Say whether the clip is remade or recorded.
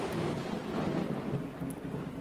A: recorded